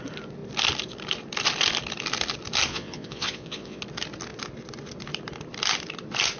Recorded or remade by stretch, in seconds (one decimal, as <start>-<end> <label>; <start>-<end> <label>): 0.0-2.7 recorded; 2.7-3.8 remade; 3.8-6.4 recorded

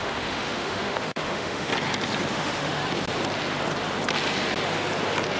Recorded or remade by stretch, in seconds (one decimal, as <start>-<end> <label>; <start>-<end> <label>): 0.0-1.7 remade; 1.7-2.3 recorded; 2.3-2.8 remade; 2.8-5.4 recorded